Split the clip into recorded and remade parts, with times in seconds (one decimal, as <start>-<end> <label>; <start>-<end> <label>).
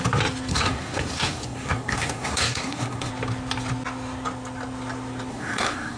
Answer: 0.0-0.5 recorded; 0.5-3.1 remade; 3.1-5.3 recorded; 5.3-6.0 remade